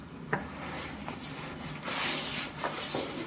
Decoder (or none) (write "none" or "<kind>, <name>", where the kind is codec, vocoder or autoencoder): none